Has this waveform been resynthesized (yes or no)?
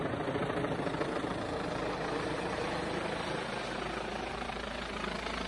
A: no